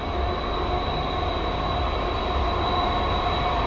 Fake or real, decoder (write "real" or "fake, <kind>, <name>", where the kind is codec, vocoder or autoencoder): real